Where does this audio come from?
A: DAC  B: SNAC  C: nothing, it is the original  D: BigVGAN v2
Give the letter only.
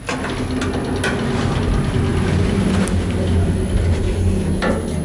C